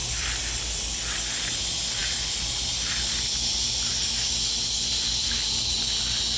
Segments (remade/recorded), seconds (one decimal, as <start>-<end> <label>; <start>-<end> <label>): 0.0-6.4 recorded